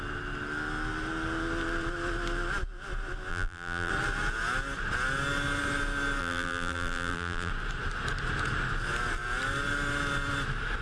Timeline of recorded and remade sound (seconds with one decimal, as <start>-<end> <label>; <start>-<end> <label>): 0.0-3.3 recorded; 3.3-3.9 remade; 3.9-6.2 recorded; 6.2-7.5 remade; 7.5-10.8 recorded